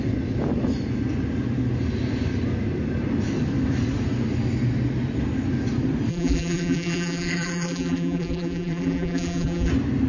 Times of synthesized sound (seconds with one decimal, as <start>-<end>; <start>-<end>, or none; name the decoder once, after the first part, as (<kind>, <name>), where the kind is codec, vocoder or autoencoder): 6.1-9.7 (vocoder, BigVGAN v2)